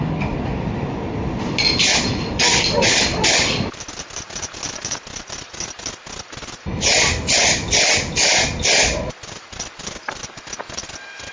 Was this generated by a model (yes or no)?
no